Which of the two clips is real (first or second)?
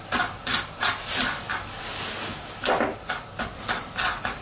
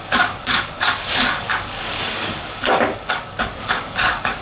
first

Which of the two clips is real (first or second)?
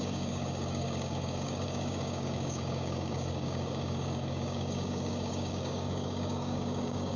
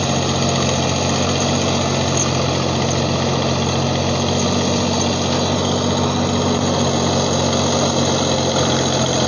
second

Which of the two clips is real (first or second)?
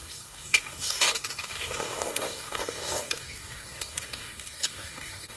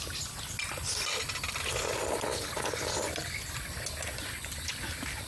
second